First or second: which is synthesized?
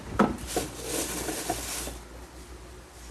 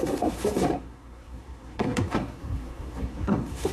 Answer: second